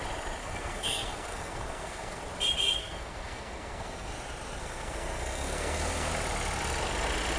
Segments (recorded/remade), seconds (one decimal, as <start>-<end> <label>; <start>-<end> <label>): 0.0-0.4 recorded; 0.4-2.2 remade; 2.2-2.8 recorded; 2.8-4.1 remade; 4.1-4.6 recorded; 4.6-6.1 remade; 6.1-7.4 recorded